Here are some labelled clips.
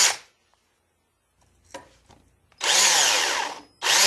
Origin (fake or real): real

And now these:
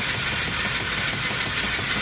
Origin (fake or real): real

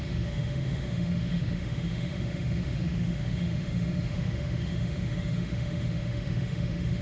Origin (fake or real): fake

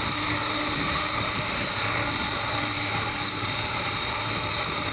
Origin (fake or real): fake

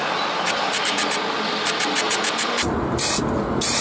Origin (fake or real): real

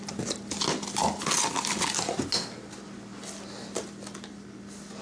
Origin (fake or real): real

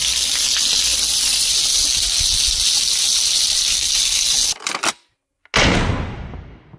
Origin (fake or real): real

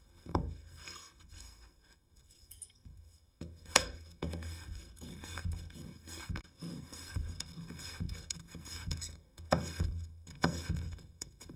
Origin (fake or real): fake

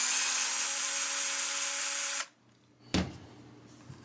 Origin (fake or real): real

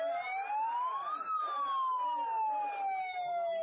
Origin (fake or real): real